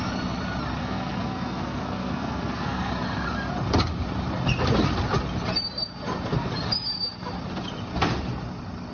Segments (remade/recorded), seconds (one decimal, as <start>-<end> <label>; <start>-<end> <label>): 0.0-0.8 recorded; 0.8-2.9 remade; 2.9-8.9 recorded